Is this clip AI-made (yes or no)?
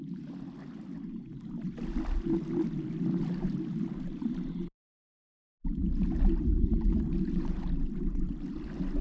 no